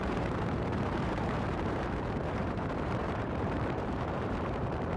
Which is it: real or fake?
fake